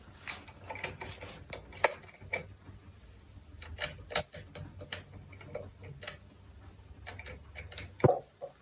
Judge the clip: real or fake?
real